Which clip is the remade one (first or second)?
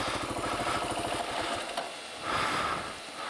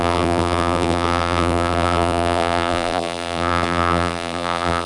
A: second